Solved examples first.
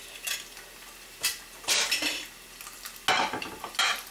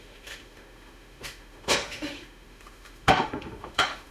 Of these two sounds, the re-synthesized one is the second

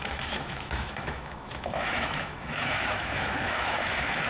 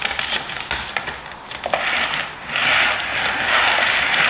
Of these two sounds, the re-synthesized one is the first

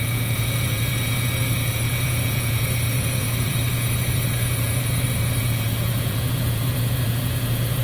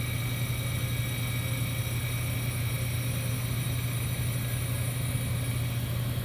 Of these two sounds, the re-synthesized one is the first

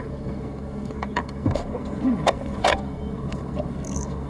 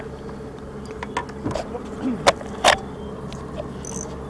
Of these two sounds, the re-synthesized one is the first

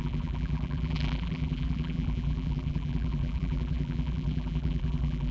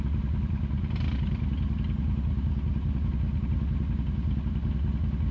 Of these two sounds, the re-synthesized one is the first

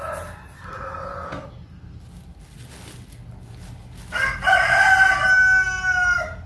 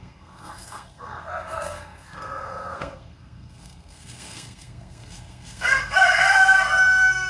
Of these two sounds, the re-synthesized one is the second